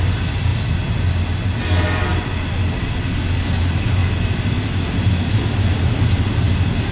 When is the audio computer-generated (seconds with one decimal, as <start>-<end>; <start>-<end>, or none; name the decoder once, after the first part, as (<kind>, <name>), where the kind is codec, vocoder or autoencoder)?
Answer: none